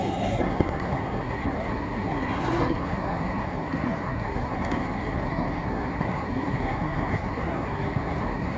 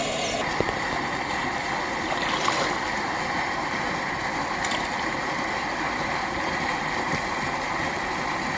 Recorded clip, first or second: second